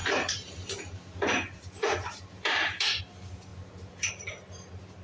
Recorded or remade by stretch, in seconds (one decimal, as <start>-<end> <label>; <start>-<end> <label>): 0.0-3.0 remade; 3.0-5.0 recorded